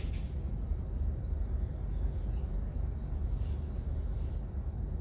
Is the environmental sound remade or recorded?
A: recorded